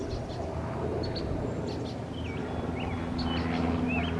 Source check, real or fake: real